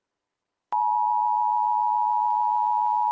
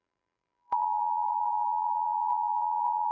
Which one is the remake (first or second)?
second